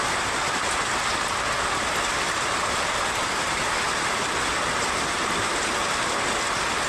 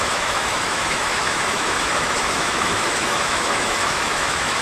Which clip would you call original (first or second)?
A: first